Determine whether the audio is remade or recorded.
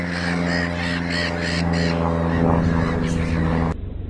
recorded